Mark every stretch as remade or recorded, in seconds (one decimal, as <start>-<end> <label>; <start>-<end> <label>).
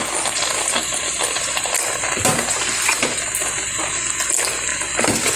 0.0-5.4 recorded